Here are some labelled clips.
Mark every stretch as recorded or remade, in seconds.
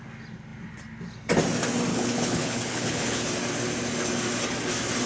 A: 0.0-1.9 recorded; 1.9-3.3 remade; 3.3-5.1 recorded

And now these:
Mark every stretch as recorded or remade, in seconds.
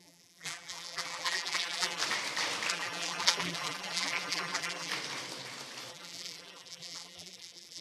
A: 0.0-2.0 remade; 2.0-2.7 recorded; 2.7-4.9 remade; 4.9-5.9 recorded; 5.9-7.8 remade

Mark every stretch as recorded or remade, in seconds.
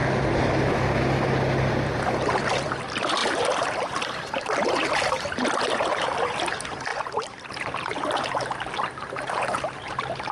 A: 0.0-1.7 recorded; 1.7-6.9 remade; 6.9-7.5 recorded; 7.5-10.3 remade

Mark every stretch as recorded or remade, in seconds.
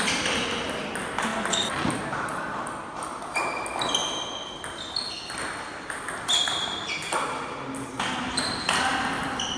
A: 0.0-9.6 recorded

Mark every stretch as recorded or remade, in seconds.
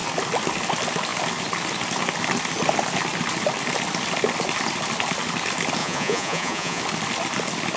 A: 0.0-5.8 recorded; 5.8-6.8 remade; 6.8-7.8 recorded